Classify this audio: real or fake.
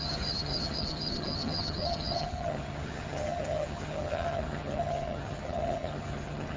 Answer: fake